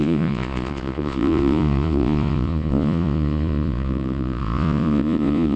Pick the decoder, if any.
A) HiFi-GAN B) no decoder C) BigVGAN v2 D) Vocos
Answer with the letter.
D